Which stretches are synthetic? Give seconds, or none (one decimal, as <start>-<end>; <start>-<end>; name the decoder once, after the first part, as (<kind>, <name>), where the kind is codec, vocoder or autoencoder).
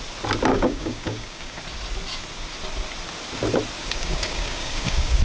0.5-1.6 (codec, DAC); 3.8-5.2